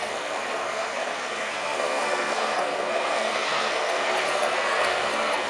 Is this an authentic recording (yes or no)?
no